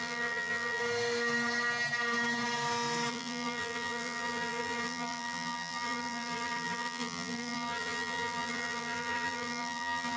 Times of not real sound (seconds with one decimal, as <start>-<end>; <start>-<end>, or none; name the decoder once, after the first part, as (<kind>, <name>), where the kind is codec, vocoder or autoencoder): 0.0-0.8 (vocoder, BigVGAN v2); 3.1-10.2